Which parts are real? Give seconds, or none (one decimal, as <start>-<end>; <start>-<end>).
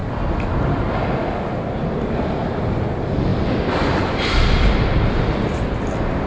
0.0-6.3